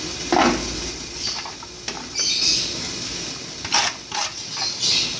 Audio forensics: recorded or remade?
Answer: recorded